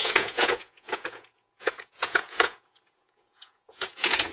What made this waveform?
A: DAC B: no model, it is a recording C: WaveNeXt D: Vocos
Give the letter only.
D